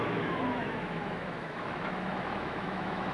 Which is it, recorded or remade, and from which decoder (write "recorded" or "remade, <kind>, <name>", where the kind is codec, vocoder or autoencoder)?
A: remade, autoencoder, DAC-VAE